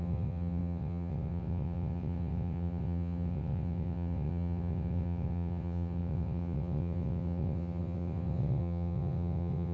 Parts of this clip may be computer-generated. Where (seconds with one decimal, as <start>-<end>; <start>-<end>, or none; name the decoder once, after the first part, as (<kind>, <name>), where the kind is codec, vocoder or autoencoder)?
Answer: 0.0-9.7 (vocoder, WaveNeXt)